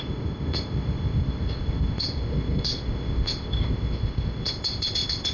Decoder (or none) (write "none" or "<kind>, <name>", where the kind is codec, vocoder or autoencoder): codec, ZipCodec